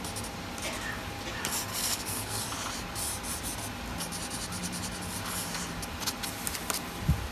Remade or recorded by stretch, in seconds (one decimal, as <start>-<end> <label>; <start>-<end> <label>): 0.0-1.7 recorded; 1.7-2.4 remade; 2.4-7.3 recorded